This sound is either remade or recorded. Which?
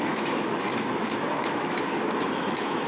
remade